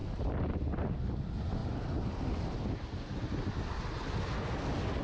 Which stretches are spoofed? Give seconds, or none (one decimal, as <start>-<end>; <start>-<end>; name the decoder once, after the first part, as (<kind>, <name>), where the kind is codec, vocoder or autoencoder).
0.0-0.7 (vocoder, BigVGAN v2)